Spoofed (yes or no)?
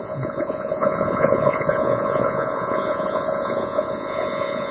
yes